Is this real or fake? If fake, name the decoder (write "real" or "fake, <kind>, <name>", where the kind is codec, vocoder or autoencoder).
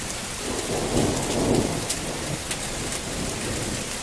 real